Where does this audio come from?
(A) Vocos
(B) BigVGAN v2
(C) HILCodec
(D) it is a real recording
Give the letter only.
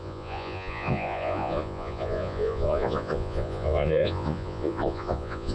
A